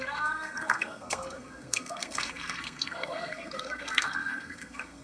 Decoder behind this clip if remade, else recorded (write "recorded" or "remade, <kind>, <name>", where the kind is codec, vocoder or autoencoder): remade, codec, SNAC